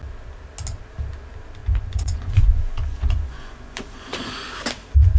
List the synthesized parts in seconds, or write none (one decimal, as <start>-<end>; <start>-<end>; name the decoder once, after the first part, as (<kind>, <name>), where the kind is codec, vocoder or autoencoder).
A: 1.6-4.5 (vocoder, Vocos)